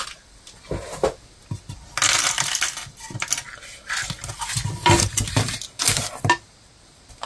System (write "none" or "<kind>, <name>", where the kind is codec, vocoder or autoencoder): none